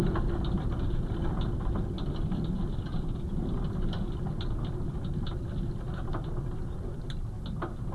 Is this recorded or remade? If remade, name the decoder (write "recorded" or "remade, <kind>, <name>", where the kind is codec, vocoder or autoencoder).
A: recorded